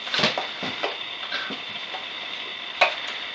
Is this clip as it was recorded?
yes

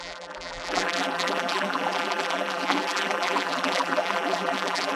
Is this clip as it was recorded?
no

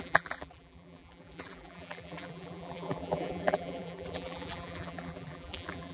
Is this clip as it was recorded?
no